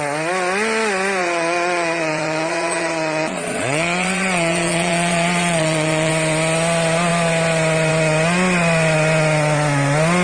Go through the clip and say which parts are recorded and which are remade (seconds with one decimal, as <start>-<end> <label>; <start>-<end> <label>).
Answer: 0.0-1.2 recorded; 1.2-6.1 remade; 6.1-10.2 recorded